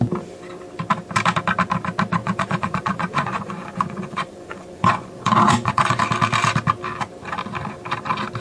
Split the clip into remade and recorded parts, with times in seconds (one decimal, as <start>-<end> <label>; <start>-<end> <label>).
0.0-2.2 recorded; 2.2-6.0 remade; 6.0-8.4 recorded